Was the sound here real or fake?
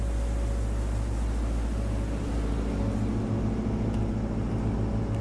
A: real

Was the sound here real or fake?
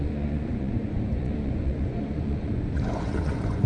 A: fake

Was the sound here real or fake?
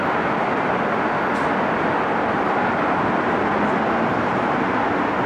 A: real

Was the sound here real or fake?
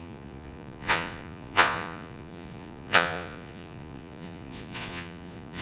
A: fake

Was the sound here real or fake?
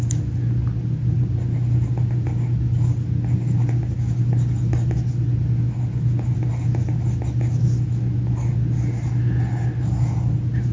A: real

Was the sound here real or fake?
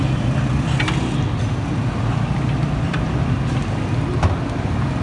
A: real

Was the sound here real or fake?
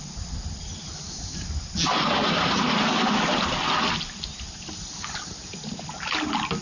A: real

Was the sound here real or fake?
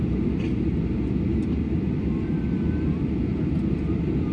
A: real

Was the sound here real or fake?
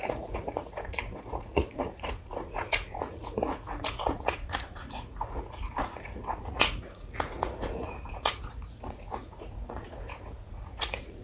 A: fake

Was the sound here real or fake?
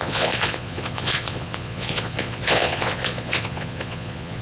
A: fake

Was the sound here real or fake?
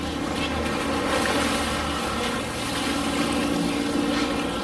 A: real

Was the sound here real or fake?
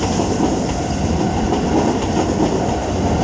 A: real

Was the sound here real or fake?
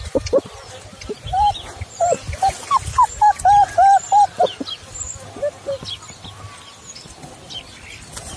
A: real